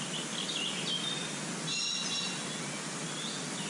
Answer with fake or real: real